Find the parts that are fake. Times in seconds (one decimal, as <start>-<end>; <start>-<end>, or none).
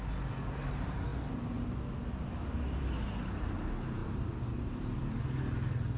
none